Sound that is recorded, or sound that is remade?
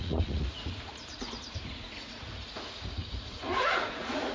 remade